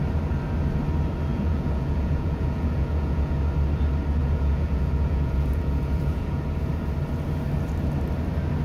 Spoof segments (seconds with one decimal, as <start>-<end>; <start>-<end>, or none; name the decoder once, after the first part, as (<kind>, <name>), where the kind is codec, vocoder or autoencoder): 1.3-3.4 (vocoder, Vocos); 4.2-6.4